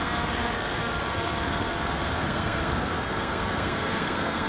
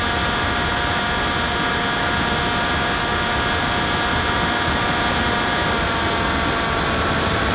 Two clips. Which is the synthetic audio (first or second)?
first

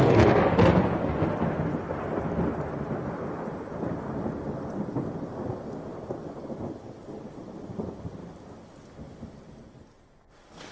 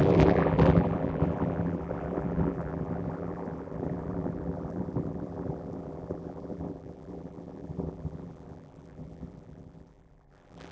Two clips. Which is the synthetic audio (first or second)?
second